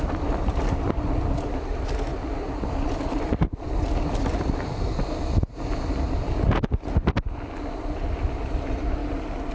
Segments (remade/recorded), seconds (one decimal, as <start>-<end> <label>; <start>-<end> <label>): 0.0-9.5 recorded